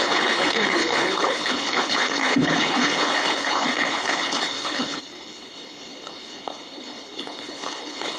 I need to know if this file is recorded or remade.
remade